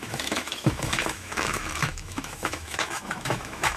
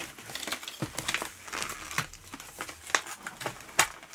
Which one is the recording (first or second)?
second